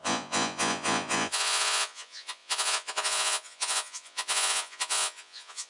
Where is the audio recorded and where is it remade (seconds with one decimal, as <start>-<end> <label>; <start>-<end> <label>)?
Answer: 0.0-5.7 remade